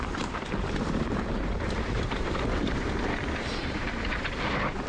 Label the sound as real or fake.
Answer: fake